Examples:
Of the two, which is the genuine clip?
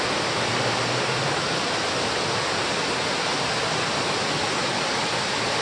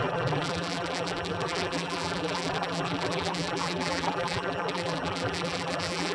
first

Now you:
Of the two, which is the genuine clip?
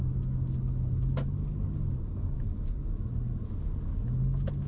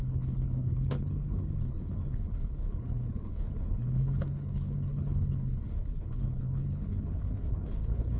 first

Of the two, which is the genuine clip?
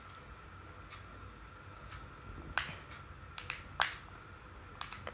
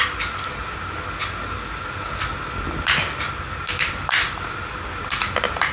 first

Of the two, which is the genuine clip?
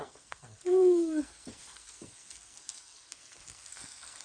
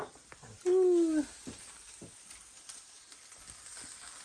second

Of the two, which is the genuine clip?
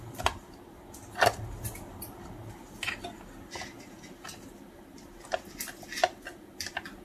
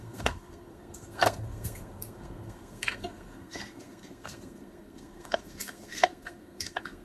first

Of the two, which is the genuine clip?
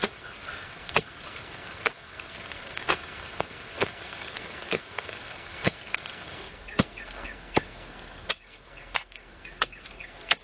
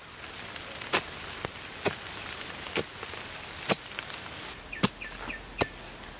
second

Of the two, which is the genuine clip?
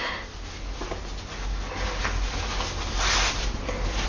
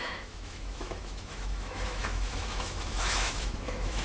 first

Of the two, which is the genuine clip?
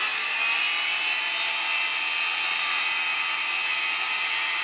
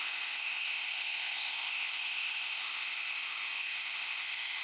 first